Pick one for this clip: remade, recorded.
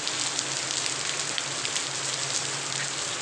recorded